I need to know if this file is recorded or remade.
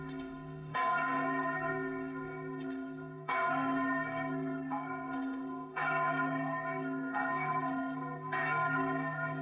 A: remade